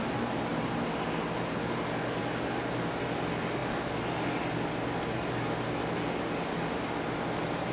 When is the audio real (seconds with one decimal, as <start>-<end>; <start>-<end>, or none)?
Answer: 0.0-7.7